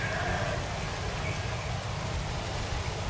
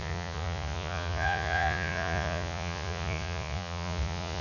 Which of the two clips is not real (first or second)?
second